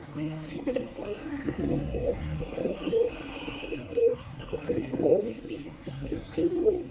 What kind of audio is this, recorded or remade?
remade